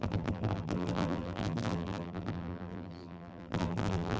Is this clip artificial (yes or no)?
yes